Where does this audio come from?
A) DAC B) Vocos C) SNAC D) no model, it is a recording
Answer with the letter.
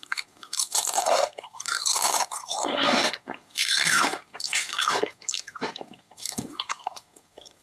C